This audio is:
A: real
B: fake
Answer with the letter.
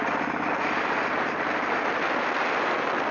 A